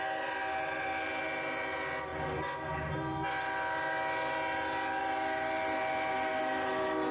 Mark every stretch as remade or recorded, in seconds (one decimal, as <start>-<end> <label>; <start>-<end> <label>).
0.0-7.1 recorded